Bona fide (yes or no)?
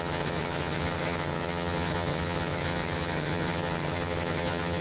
no